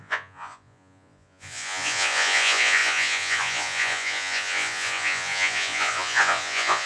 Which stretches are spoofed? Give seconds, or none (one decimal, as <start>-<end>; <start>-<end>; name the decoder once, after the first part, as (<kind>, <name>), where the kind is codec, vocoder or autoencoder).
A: 0.0-6.9 (vocoder, Vocos)